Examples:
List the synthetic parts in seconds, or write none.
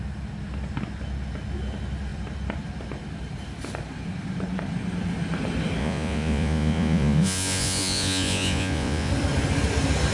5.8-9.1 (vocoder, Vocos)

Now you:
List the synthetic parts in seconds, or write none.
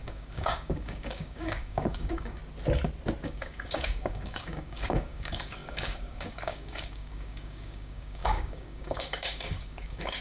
0.0-2.4 (codec, DAC); 3.2-10.2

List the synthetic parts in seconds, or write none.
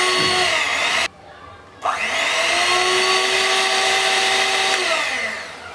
0.7-1.4 (vocoder, BigVGAN v2)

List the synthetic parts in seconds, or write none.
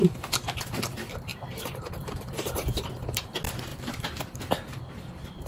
1.3-2.9 (vocoder, BigVGAN v2); 3.7-4.9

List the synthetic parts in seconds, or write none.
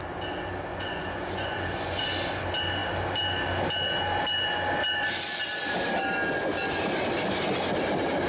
0.7-2.0 (vocoder, Vocos)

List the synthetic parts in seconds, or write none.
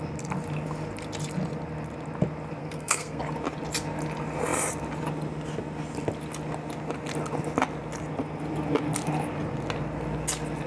2.6-3.2 (codec, SNAC)